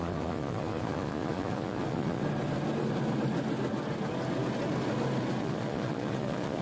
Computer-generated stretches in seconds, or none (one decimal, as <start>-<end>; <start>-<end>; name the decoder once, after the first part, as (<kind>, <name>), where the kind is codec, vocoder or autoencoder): 0.0-2.2 (vocoder, Vocos); 5.4-6.6